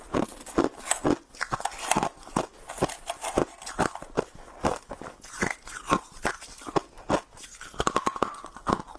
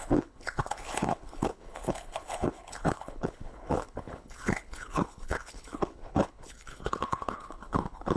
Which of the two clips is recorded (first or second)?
first